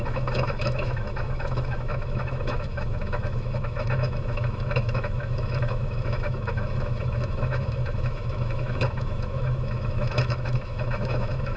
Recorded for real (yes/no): no